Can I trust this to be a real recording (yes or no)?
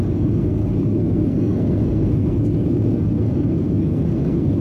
no